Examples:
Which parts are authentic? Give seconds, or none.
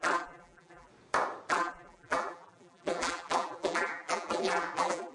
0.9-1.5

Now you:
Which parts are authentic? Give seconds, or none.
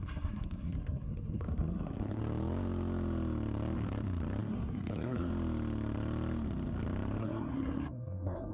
2.2-4.4; 5.3-7.2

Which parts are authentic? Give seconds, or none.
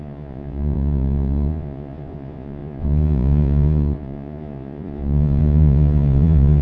none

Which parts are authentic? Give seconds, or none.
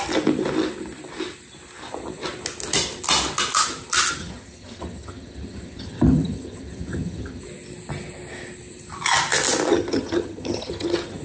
0.0-4.2; 7.4-9.7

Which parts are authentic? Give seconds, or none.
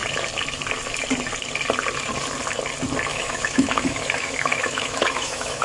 0.0-3.1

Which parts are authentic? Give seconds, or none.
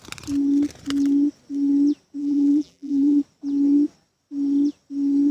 0.0-2.2; 3.2-5.3